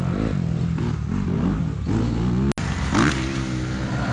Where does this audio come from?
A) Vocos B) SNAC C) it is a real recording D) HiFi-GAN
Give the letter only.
C